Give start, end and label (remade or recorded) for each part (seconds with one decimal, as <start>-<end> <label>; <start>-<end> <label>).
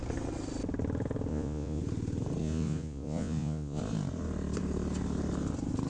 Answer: 0.0-1.3 recorded; 1.3-1.8 remade; 1.8-2.4 recorded; 2.4-3.8 remade; 3.8-5.9 recorded